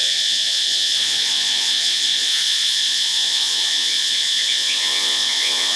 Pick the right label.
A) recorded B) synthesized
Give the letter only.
B